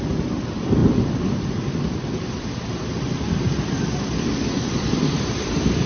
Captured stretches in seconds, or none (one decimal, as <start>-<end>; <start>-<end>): none